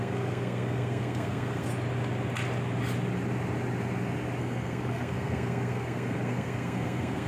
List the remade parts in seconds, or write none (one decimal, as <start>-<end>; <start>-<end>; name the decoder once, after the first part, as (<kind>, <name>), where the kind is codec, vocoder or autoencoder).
0.0-1.7 (codec, SNAC); 4.4-7.3